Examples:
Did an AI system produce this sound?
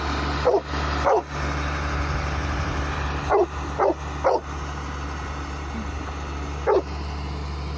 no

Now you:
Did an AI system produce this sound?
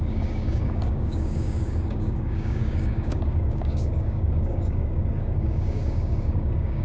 yes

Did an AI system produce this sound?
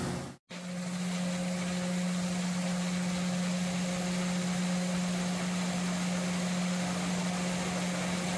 no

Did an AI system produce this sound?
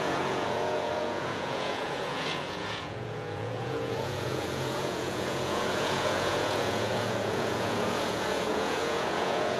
yes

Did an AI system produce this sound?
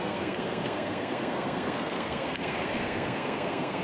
yes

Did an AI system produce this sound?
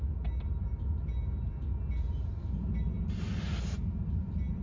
no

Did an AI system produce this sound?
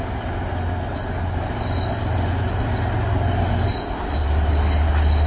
no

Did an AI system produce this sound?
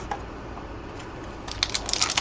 no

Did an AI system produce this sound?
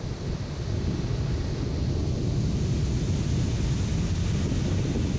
no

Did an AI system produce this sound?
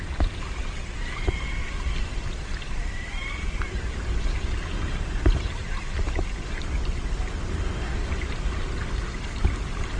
no